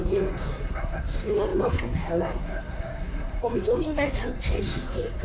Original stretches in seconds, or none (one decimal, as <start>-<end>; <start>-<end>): none